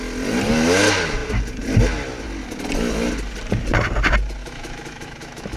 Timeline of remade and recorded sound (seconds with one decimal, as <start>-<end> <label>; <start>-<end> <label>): 0.0-4.4 recorded; 4.4-5.6 remade